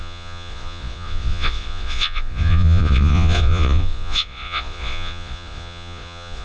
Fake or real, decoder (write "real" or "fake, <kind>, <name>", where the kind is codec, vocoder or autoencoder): fake, vocoder, Vocos